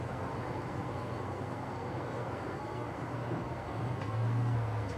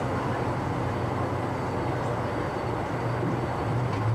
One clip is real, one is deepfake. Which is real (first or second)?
second